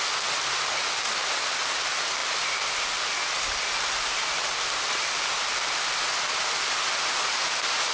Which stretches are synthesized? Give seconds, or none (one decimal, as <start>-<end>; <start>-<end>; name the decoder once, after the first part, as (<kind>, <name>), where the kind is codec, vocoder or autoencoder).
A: none